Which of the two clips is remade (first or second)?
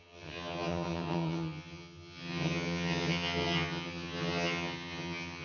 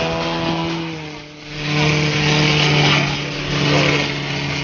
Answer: first